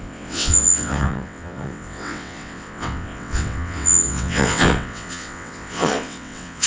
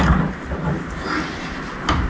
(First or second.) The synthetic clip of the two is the first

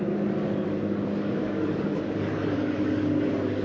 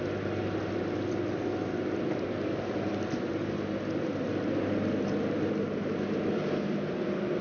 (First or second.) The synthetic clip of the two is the first